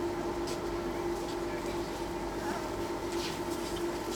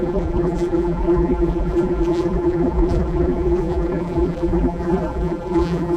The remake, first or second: second